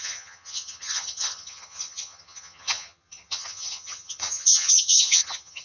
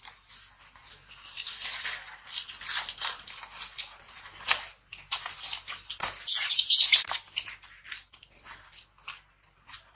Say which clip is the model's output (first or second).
first